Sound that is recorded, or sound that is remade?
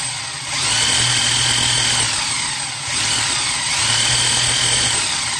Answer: recorded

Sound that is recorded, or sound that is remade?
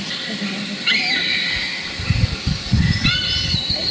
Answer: recorded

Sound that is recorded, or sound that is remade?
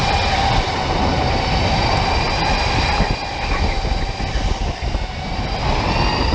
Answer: recorded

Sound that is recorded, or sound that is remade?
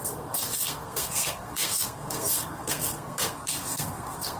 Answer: remade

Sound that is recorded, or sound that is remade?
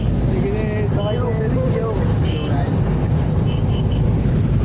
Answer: recorded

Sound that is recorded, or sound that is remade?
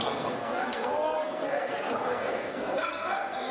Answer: remade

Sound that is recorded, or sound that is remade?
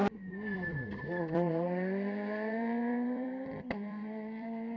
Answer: remade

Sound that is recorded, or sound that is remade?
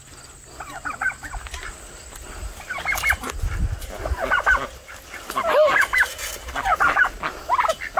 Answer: recorded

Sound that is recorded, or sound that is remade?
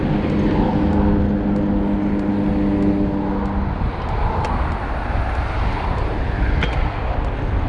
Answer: recorded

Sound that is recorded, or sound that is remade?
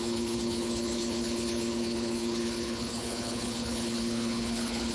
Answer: remade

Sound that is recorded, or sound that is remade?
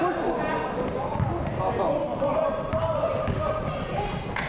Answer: recorded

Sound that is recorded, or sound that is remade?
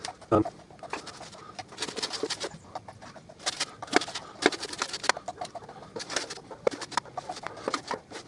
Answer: remade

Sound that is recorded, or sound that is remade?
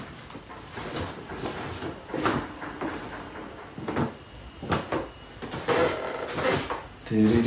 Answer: recorded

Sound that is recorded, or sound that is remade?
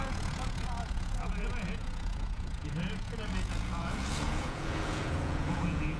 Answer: remade